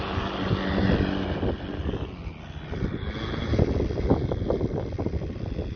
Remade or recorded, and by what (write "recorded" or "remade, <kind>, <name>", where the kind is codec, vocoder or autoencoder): recorded